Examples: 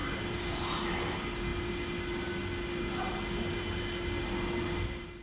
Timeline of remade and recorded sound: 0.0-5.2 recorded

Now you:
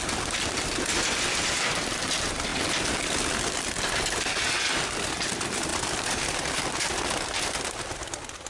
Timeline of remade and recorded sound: 0.0-5.7 recorded; 5.7-6.6 remade; 6.6-8.5 recorded

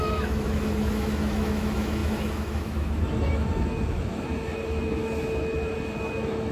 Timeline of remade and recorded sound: 0.0-6.5 remade

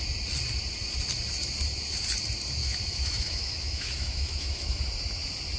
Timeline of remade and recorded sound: 0.0-2.6 recorded; 2.6-4.8 remade; 4.8-5.6 recorded

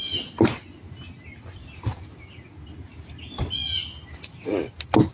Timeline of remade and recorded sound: 0.0-5.1 recorded